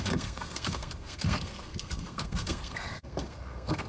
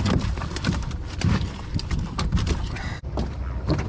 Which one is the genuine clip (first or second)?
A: second